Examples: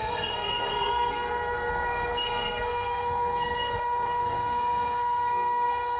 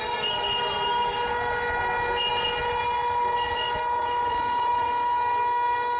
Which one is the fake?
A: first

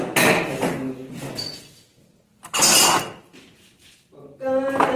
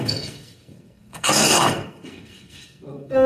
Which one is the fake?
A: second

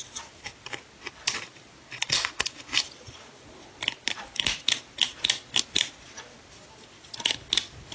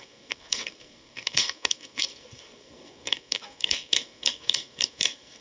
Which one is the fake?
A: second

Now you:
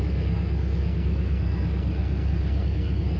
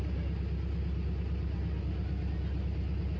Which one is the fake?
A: first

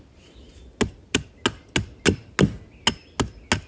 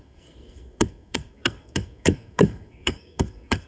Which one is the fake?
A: second